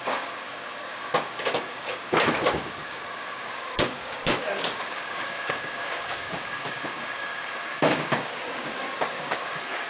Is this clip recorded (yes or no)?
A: no